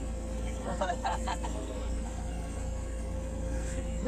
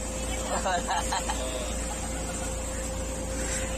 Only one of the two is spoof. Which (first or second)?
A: first